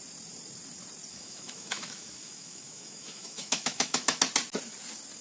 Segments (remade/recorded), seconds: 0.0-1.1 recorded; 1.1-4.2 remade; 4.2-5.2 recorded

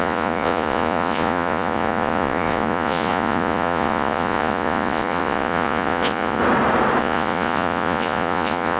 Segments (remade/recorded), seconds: 0.0-6.4 remade; 6.4-7.0 recorded; 7.0-8.8 remade

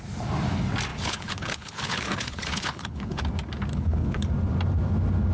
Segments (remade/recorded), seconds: 0.0-0.9 recorded; 0.9-3.2 remade; 3.2-3.7 recorded; 3.7-4.3 remade; 4.3-5.3 recorded

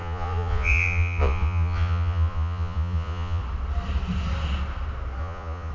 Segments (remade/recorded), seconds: 0.0-3.4 remade; 3.4-5.2 recorded; 5.2-5.7 remade

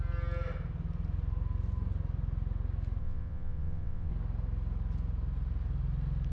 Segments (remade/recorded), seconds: 0.0-3.0 recorded; 3.0-4.1 remade; 4.1-6.3 recorded